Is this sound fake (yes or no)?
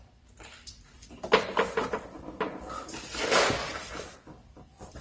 no